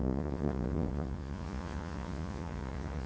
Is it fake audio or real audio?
fake